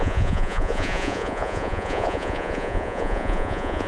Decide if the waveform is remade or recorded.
remade